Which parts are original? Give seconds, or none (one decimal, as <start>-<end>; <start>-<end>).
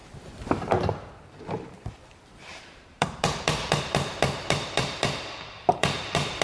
none